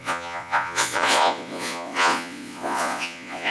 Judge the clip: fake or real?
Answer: fake